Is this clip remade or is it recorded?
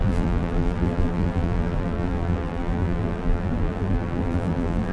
remade